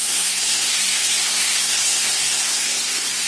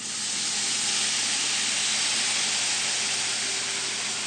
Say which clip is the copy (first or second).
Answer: first